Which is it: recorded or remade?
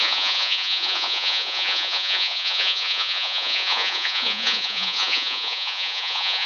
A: remade